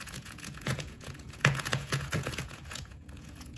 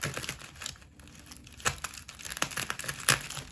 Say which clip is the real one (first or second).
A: second